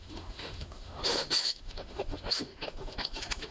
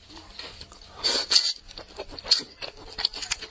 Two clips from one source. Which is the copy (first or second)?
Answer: first